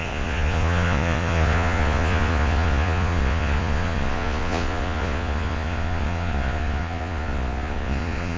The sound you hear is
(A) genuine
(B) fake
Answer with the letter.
B